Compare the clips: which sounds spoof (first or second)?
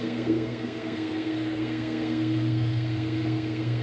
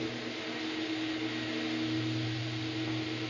first